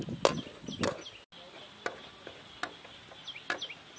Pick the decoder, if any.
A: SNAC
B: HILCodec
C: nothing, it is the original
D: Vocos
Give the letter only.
C